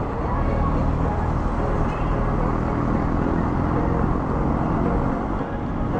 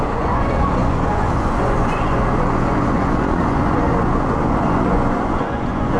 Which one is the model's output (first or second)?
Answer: second